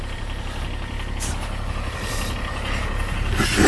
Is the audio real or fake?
real